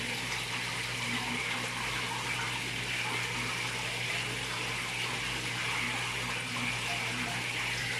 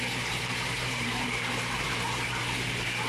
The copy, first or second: second